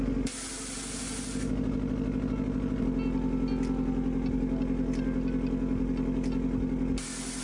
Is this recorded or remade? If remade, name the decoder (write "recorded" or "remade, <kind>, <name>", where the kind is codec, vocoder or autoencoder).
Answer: recorded